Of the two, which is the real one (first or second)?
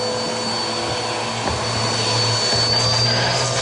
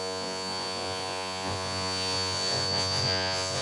first